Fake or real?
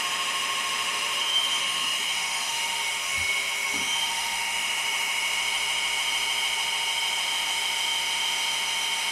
fake